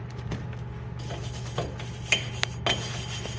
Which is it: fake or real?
real